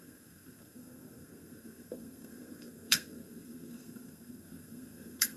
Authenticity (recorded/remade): remade